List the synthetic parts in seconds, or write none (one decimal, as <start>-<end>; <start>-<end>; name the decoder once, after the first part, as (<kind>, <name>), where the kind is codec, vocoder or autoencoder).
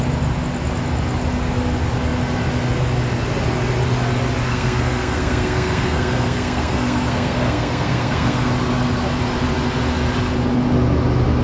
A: 4.5-8.5 (codec, SNAC)